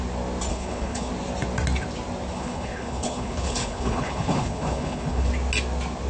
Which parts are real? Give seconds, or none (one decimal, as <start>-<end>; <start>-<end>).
0.0-0.5; 1.1-2.3; 5.3-6.1